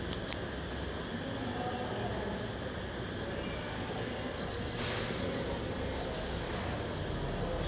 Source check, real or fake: real